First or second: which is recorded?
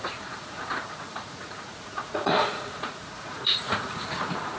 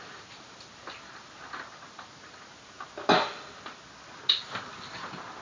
second